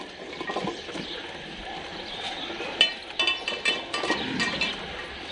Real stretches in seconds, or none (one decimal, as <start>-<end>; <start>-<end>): 0.0-5.3

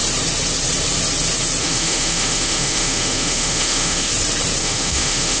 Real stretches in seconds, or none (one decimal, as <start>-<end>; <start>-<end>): 0.0-1.6; 4.1-4.6

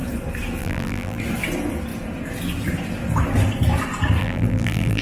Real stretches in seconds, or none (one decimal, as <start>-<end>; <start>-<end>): 0.0-0.6; 1.2-4.2

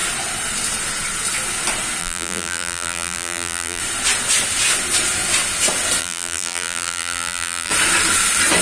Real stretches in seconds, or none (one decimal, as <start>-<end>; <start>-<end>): 0.0-2.0; 3.8-6.0; 7.7-8.6